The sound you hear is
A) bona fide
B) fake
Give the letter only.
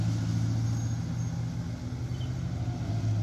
A